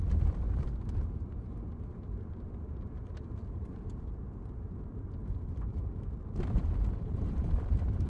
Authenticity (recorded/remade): remade